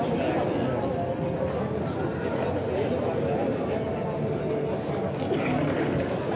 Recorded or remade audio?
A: recorded